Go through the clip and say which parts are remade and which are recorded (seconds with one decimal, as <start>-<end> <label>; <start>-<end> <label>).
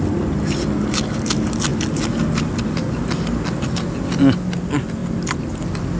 0.0-6.0 recorded